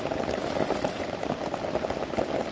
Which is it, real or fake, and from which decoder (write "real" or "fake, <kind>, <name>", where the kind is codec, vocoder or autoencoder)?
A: real